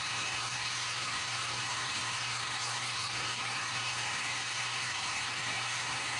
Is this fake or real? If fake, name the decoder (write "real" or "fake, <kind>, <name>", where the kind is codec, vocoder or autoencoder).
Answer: fake, codec, SNAC